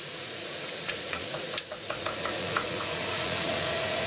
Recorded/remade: remade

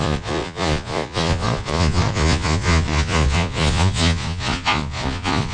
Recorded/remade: remade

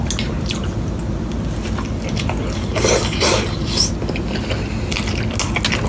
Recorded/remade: recorded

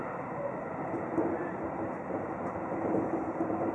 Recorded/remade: recorded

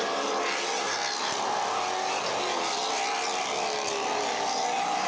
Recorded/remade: recorded